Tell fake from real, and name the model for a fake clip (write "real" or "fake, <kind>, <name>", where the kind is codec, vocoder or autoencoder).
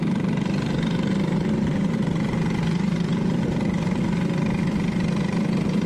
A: real